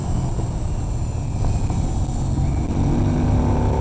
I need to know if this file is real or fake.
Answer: real